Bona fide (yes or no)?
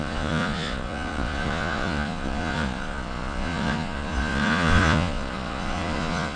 no